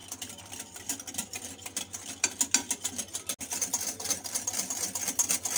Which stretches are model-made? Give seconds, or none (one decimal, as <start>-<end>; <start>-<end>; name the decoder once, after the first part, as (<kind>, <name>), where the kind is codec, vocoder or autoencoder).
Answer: none